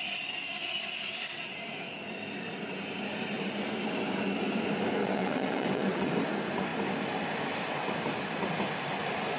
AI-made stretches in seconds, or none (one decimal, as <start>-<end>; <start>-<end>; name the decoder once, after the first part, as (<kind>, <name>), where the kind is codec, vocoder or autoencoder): 5.0-6.1 (vocoder, WaveNeXt)